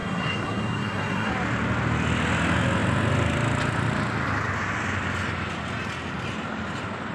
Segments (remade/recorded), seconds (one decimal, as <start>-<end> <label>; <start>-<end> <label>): 0.0-1.3 remade; 1.3-7.1 recorded